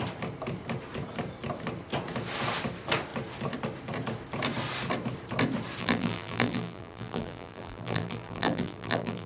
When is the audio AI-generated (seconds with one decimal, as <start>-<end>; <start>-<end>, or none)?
5.8-9.3